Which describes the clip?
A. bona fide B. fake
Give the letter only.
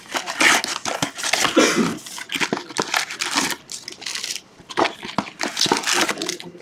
A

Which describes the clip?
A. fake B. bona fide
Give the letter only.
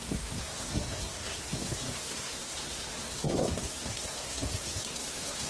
A